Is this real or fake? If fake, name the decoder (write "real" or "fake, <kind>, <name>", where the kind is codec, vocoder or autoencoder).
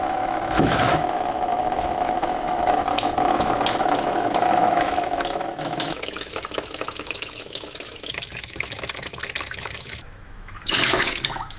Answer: fake, autoencoder, DAC-VAE